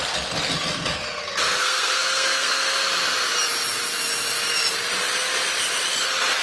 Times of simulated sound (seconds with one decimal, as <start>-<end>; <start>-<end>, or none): 1.6-2.8